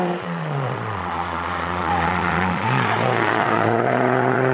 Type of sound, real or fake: fake